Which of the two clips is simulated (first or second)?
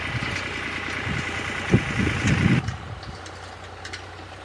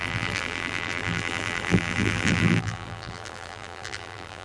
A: second